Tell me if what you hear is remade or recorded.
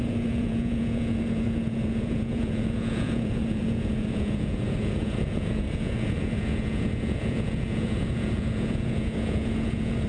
remade